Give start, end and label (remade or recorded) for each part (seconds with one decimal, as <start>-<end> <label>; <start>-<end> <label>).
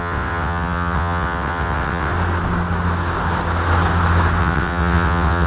0.0-2.1 remade; 2.1-4.4 recorded; 4.4-5.5 remade